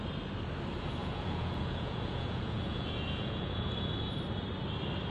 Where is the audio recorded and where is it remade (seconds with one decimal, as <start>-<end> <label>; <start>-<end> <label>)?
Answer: 0.0-1.0 recorded; 1.0-4.1 remade; 4.1-5.1 recorded